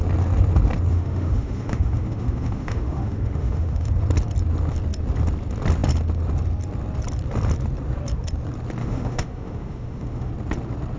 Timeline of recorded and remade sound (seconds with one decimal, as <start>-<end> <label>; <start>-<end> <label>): 0.0-0.9 recorded; 0.9-3.9 remade; 3.9-8.8 recorded; 8.8-10.3 remade; 10.3-11.0 recorded